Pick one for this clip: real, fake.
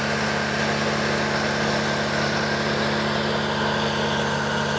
real